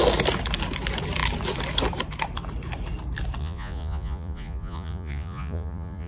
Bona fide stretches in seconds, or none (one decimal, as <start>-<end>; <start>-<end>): 0.0-3.4